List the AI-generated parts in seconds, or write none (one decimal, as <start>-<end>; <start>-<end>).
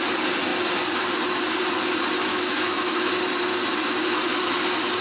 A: 2.3-3.1